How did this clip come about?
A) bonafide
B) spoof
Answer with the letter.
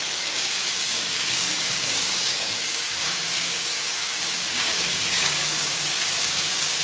B